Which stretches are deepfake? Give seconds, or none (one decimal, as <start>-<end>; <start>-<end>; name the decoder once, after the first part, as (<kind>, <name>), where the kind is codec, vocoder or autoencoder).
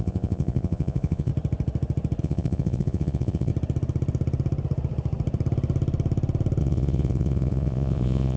0.0-1.3 (vocoder, Vocos); 2.2-3.5; 6.6-8.4